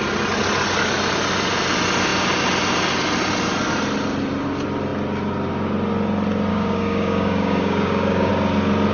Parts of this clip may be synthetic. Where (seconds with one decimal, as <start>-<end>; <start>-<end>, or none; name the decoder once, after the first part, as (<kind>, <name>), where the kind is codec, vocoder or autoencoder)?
6.5-8.3 (codec, DAC)